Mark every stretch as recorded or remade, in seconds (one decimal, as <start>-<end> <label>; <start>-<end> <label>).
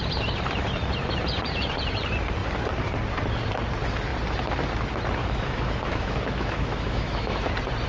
0.0-5.2 recorded; 5.2-7.5 remade; 7.5-7.9 recorded